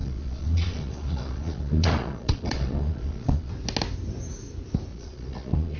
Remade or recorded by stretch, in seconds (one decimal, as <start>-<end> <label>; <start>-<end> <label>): 0.0-3.5 remade; 3.5-4.9 recorded; 4.9-5.8 remade

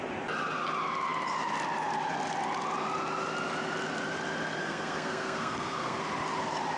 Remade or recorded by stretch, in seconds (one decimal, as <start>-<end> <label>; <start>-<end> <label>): 0.0-4.6 recorded; 4.6-6.0 remade; 6.0-6.8 recorded

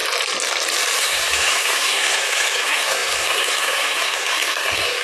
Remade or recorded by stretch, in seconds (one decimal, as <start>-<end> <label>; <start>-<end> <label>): 0.0-1.0 recorded; 1.0-5.0 remade

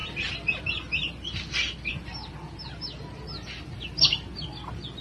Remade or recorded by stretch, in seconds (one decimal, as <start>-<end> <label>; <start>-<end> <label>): 0.0-5.0 recorded

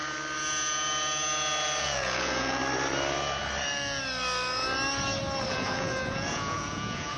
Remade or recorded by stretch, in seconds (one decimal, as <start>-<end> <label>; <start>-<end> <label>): 0.0-1.8 recorded; 1.8-2.6 remade; 2.6-5.5 recorded; 5.5-7.2 remade

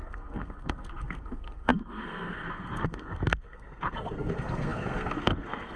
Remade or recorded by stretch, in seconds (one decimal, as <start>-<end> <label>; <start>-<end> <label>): 0.0-5.8 remade

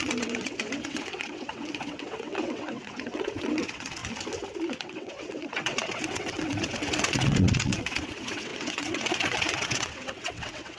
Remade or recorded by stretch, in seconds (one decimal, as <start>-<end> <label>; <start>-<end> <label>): 0.0-4.0 remade; 4.0-4.8 recorded; 4.8-10.8 remade

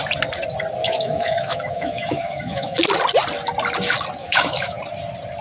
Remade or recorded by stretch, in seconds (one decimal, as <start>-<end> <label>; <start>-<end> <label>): 0.0-0.8 recorded; 0.8-2.8 remade; 2.8-4.2 recorded; 4.2-4.8 remade; 4.8-5.4 recorded